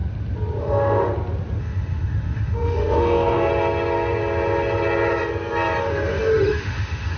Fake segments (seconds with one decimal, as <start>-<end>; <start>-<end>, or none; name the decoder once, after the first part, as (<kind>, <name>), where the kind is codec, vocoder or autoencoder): 0.6-1.1 (autoencoder, DAC-VAE); 1.6-3.5; 5.8-7.2